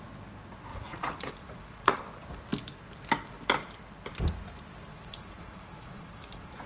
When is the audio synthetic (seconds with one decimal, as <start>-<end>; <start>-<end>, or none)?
0.7-2.0; 4.9-6.7